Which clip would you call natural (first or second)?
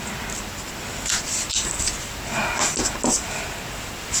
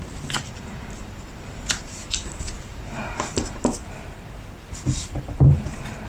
first